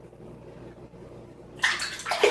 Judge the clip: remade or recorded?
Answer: recorded